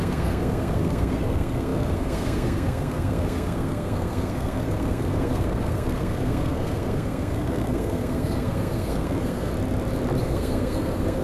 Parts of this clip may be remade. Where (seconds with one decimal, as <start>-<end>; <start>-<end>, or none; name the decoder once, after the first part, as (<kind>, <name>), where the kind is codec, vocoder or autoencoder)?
0.0-9.5 (codec, SNAC); 10.2-11.2

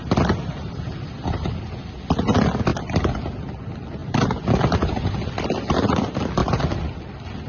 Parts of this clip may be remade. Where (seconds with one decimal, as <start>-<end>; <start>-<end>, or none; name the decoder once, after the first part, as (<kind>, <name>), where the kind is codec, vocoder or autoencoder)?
4.0-5.3 (vocoder, BigVGAN v2); 6.4-7.0

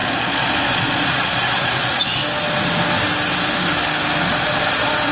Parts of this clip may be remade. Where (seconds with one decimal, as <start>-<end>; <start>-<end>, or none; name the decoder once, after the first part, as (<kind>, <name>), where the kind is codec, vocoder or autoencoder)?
0.0-2.2 (vocoder, Vocos); 4.2-5.1

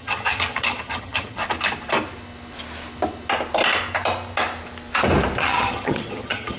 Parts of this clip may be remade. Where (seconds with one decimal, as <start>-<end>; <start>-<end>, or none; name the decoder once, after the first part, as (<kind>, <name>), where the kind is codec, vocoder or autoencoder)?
0.0-1.4 (vocoder, HiFi-GAN); 5.4-6.6